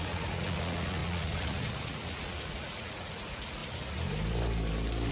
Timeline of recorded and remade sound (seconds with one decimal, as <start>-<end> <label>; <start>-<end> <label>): 0.0-3.6 remade; 3.6-5.1 recorded